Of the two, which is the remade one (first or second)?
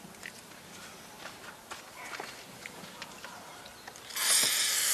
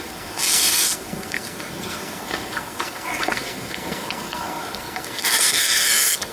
second